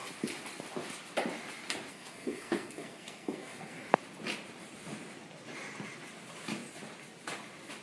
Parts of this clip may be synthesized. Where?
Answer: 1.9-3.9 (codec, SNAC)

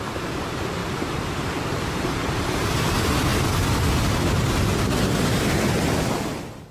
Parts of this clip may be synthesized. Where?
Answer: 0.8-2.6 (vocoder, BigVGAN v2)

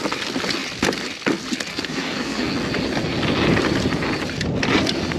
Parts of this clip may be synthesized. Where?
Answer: 1.7-2.5 (codec, SNAC)